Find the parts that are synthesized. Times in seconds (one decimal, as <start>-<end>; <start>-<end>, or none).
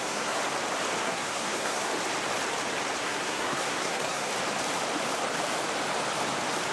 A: 0.0-0.4; 1.0-1.9; 3.0-4.3